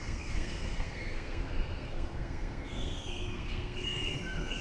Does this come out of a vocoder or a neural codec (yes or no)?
yes